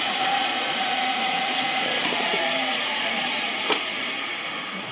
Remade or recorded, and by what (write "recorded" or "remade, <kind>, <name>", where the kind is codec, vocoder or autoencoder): remade, vocoder, Vocos